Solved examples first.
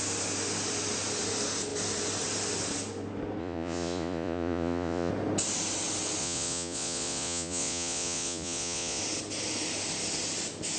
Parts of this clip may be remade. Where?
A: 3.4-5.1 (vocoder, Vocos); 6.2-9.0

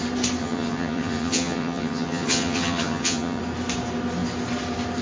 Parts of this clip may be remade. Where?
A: 0.4-3.4 (vocoder, HiFi-GAN)

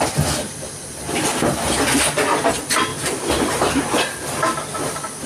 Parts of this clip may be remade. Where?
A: 2.9-4.1 (vocoder, BigVGAN v2)

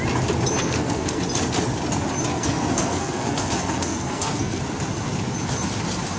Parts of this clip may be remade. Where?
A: 0.6-1.2 (codec, SNAC); 2.3-4.6

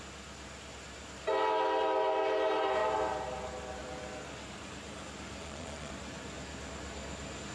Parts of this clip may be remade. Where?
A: 5.4-5.9 (vocoder, Vocos)

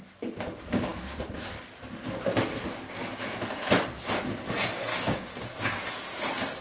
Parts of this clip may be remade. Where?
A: 4.9-5.9 (codec, DAC)

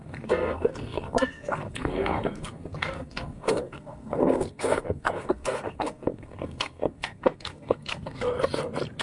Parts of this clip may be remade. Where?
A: 0.0-8.3 (codec, SNAC)